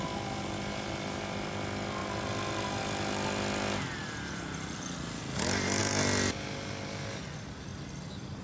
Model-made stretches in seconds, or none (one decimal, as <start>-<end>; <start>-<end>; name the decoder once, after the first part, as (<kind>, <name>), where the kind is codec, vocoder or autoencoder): none